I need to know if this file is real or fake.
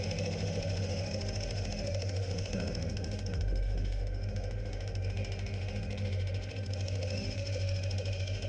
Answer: fake